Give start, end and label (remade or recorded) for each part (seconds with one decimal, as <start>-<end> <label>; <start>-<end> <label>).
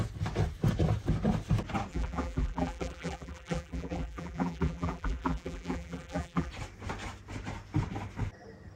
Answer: 0.0-1.9 recorded; 1.9-6.5 remade; 6.5-8.8 recorded